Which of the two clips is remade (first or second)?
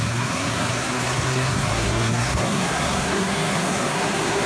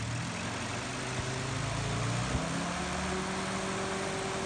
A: first